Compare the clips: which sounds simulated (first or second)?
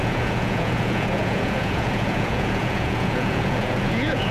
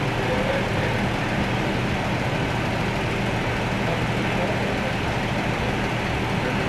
first